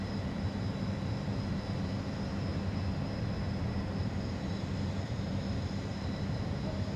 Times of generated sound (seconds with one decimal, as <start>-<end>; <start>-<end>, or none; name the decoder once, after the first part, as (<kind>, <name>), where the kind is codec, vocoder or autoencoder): none